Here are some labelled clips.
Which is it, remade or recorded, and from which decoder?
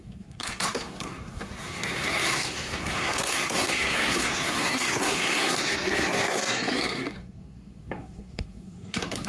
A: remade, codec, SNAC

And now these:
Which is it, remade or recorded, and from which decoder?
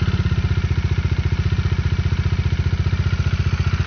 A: recorded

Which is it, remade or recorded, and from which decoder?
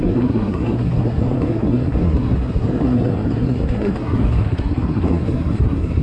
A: remade, codec, SNAC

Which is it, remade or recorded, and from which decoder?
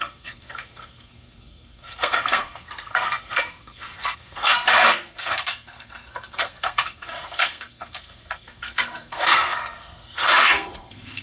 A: remade, codec, SNAC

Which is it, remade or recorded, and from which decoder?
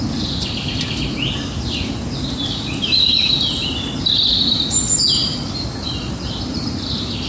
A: recorded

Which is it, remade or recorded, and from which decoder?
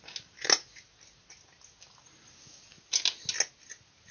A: recorded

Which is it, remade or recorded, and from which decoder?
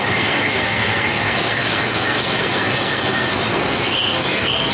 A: remade, codec, SNAC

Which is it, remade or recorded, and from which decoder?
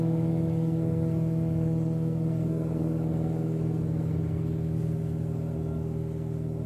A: remade, codec, SNAC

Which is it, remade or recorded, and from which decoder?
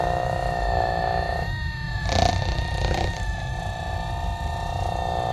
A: recorded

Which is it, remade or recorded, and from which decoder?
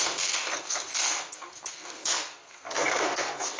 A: remade, codec, SNAC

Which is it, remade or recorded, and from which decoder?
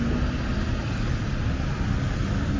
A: recorded